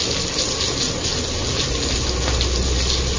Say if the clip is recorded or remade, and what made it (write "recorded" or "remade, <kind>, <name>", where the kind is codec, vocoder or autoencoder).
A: recorded